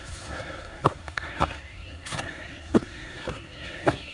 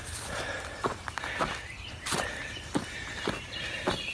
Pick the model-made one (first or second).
first